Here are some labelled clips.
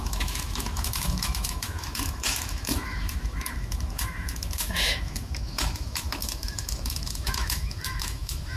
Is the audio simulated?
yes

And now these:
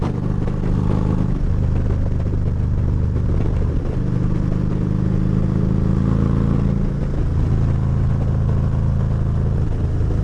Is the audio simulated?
no